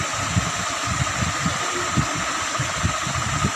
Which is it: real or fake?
real